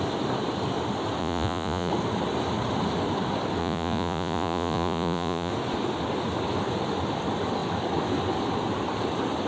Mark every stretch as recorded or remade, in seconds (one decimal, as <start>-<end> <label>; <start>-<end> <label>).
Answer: 0.0-1.2 recorded; 1.2-1.9 remade; 1.9-3.6 recorded; 3.6-5.5 remade; 5.5-9.5 recorded

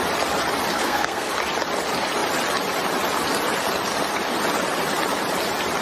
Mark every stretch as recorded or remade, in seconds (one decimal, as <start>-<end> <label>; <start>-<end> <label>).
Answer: 0.0-0.7 recorded; 0.7-1.3 remade; 1.3-5.8 recorded

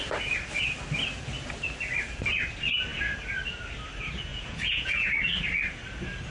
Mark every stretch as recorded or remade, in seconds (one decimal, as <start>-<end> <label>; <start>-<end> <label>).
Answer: 0.0-4.3 recorded; 4.3-5.1 remade; 5.1-6.3 recorded

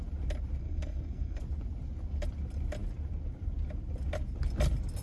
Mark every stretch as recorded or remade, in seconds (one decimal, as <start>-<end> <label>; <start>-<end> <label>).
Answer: 0.0-0.6 recorded; 0.6-1.4 remade; 1.4-5.0 recorded